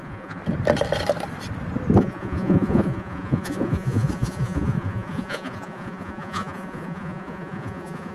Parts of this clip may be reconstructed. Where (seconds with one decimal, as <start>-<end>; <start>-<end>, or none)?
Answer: 0.0-0.4; 2.0-8.1